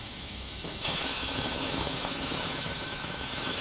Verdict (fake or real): fake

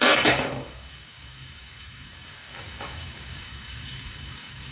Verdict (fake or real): fake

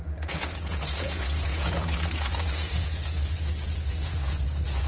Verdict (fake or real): fake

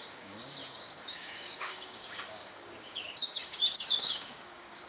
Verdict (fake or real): fake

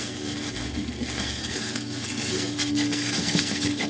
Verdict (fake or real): fake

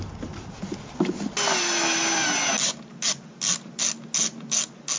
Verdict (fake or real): real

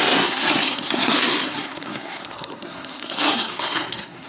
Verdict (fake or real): fake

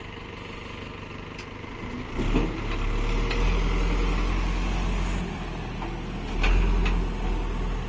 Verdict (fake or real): real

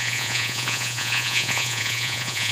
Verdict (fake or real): fake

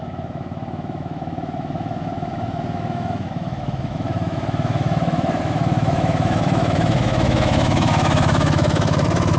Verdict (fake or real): fake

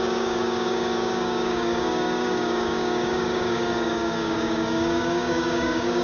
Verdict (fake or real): fake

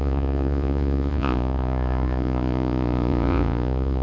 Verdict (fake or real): fake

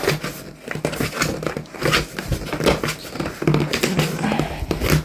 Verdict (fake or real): real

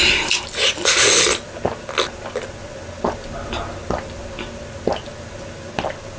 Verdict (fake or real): real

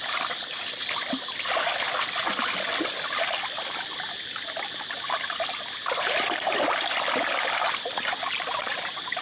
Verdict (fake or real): real